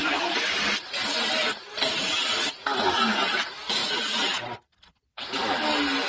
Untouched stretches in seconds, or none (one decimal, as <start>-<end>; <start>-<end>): 0.9-1.4; 2.1-3.8; 4.6-6.1